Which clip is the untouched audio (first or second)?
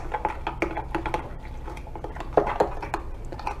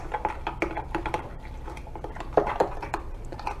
first